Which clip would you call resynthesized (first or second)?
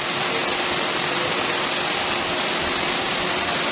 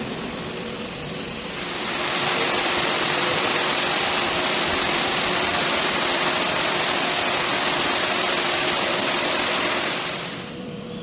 second